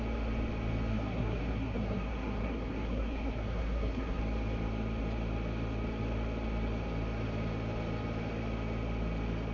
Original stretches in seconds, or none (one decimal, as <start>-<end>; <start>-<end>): 0.0-0.9; 4.2-9.5